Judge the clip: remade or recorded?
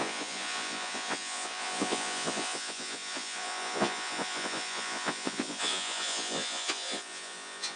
remade